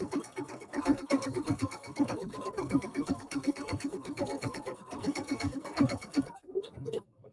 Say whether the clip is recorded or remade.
remade